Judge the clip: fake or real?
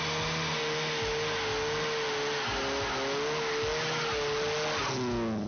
real